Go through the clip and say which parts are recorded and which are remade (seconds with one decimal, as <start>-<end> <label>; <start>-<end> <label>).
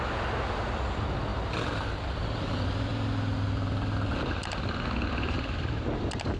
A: 0.0-6.4 recorded